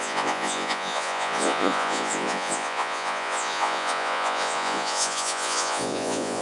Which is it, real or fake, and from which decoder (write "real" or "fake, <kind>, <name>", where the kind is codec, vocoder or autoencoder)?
fake, vocoder, Vocos